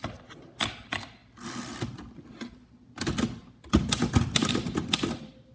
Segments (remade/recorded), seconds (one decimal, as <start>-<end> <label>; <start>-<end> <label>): 0.0-5.5 recorded